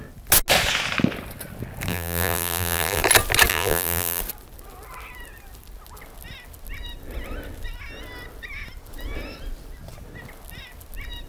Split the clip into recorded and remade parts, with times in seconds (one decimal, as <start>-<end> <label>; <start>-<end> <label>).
0.0-1.9 recorded; 1.9-3.0 remade; 3.0-3.5 recorded; 3.5-4.2 remade; 4.2-11.3 recorded